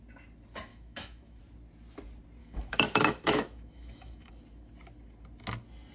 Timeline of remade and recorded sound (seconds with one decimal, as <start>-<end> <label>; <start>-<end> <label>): 0.0-0.7 recorded; 0.7-1.4 remade; 1.4-2.4 recorded; 2.4-4.3 remade; 4.3-5.9 recorded